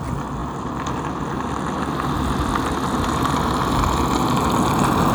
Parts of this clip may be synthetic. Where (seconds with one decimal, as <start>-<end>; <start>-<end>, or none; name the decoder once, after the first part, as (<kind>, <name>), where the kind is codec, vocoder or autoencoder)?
none